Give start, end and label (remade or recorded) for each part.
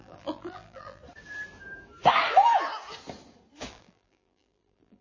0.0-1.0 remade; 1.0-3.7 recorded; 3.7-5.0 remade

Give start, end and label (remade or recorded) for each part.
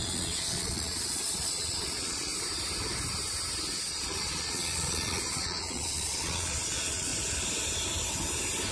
0.0-2.3 remade; 2.3-3.9 recorded; 3.9-7.1 remade; 7.1-8.7 recorded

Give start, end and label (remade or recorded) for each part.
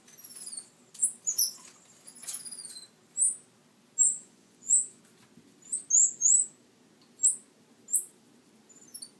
0.0-4.1 recorded; 4.1-5.0 remade; 5.0-9.2 recorded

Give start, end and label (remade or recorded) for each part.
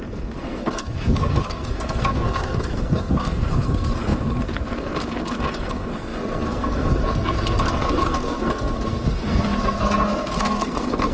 0.0-11.1 remade